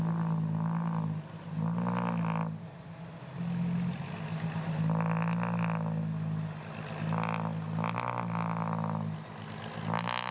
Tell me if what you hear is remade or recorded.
recorded